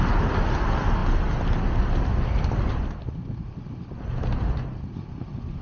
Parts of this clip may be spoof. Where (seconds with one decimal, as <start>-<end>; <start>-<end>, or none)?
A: none